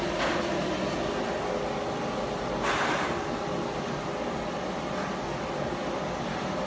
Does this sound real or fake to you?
real